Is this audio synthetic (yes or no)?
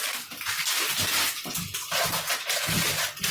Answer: no